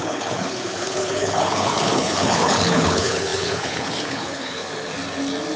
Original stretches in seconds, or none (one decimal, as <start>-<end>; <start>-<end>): 4.6-5.6